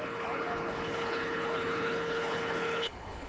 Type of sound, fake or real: fake